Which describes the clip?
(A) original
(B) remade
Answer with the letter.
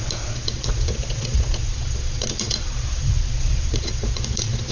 B